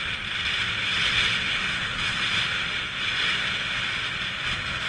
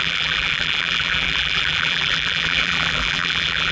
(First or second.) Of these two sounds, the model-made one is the second